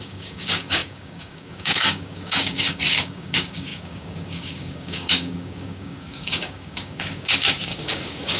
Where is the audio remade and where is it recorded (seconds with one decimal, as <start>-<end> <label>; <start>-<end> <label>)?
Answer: 0.0-8.4 remade